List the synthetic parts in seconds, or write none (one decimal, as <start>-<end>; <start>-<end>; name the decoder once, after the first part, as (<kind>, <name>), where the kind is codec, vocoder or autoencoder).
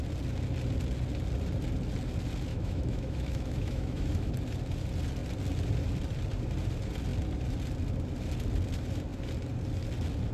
2.5-4.3 (autoencoder, DAC-VAE)